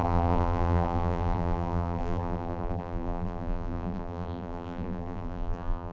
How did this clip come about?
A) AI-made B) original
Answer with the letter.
A